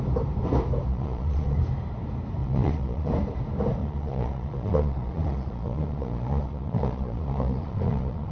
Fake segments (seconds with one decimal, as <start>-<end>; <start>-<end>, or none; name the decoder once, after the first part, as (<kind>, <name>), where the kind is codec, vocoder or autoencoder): 0.9-1.6 (vocoder, Vocos); 2.4-3.1; 3.8-8.3